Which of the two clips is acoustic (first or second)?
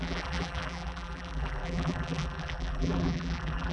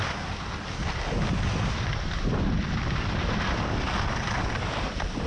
second